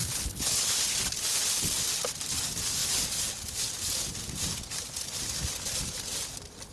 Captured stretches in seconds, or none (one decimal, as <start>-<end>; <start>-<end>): 0.7-6.7